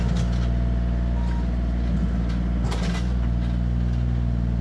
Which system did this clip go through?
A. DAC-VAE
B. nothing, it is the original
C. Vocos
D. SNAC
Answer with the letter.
B